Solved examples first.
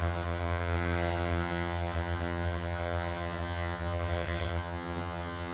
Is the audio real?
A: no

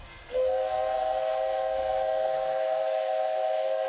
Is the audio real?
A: no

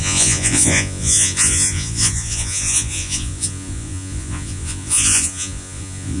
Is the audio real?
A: no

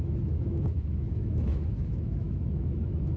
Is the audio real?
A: no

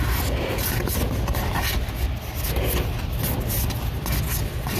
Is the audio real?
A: yes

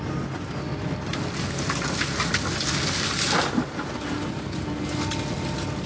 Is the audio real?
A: yes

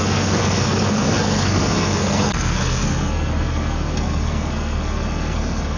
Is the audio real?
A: no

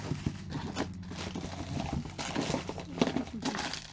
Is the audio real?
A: yes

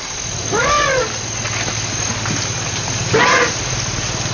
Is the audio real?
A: yes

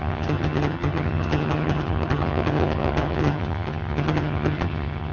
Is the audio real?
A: no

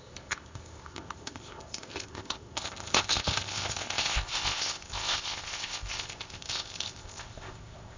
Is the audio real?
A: no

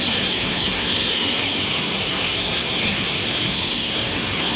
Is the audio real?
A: no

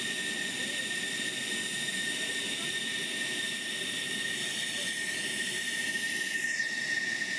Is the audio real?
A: yes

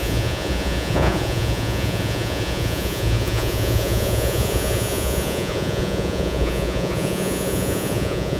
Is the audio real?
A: no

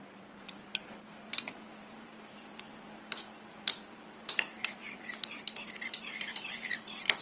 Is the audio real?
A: yes